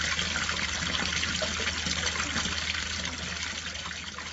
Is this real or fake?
real